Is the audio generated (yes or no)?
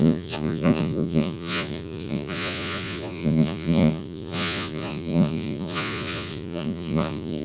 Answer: yes